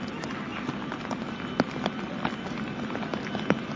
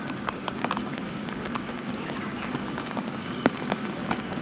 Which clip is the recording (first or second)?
first